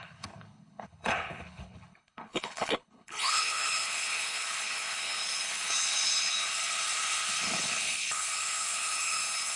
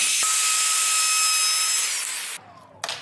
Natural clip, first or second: second